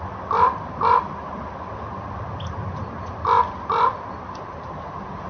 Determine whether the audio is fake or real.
real